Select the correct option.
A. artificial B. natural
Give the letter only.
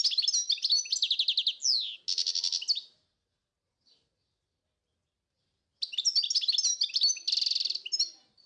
B